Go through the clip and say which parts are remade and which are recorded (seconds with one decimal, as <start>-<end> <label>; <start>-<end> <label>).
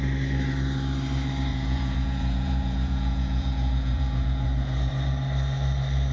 0.0-1.5 recorded; 1.5-4.9 remade; 4.9-6.1 recorded